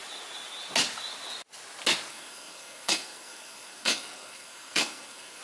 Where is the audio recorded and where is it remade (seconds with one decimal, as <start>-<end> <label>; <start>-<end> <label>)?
0.0-2.1 recorded; 2.1-5.4 remade